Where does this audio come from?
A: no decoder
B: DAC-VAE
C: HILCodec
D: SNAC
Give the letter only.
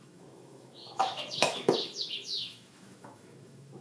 B